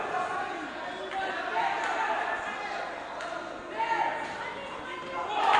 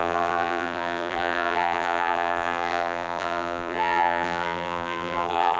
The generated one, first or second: second